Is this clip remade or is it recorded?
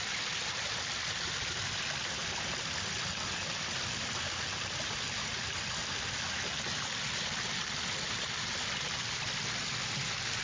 recorded